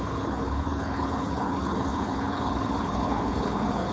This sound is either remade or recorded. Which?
remade